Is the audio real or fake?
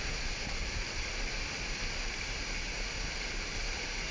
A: real